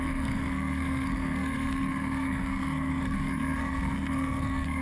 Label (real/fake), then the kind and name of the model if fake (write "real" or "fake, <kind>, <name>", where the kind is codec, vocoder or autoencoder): fake, codec, SNAC